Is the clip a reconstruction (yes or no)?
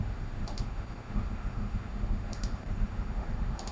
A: yes